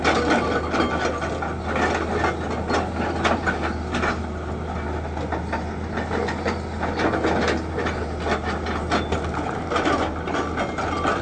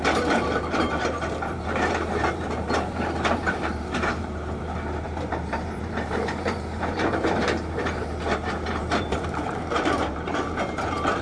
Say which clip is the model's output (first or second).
second